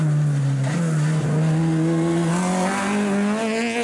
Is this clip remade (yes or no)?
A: no